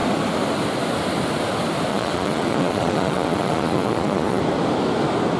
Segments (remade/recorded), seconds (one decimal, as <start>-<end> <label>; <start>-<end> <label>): 0.0-1.9 recorded; 1.9-4.4 remade; 4.4-5.4 recorded